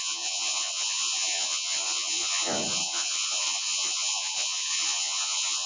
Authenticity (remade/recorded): remade